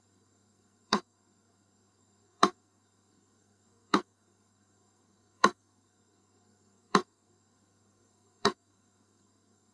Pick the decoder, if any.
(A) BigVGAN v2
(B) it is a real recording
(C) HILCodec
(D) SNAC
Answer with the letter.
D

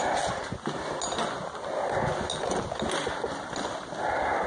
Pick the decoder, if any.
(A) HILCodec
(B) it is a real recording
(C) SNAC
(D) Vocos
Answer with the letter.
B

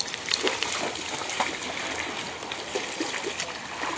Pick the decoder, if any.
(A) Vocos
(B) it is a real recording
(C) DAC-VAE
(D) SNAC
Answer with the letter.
B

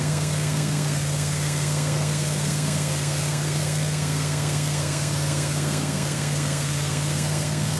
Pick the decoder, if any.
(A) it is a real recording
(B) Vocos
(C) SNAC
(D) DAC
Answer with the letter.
C